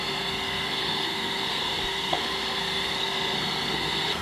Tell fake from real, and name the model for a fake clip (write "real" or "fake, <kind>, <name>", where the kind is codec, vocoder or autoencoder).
fake, codec, SNAC